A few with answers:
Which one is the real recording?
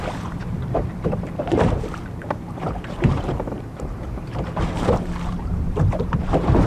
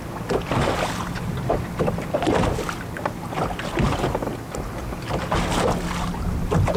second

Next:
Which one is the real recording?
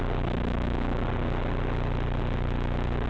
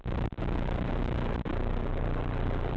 first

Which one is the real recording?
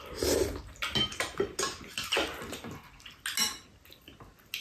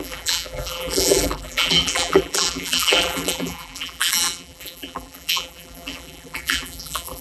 first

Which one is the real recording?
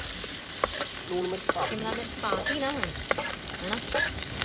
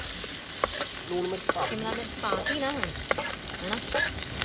second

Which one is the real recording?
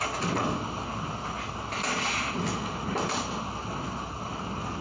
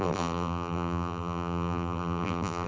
first